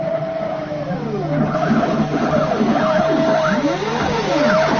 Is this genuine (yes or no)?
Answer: yes